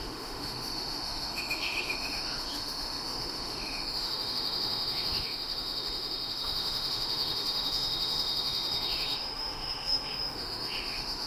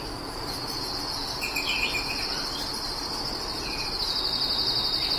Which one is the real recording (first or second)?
second